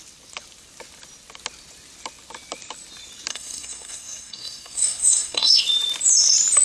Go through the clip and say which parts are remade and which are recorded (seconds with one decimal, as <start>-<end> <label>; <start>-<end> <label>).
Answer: 0.0-3.3 recorded; 3.3-5.6 remade; 5.6-6.6 recorded